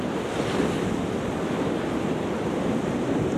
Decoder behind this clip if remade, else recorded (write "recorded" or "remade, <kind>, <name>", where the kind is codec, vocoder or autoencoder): recorded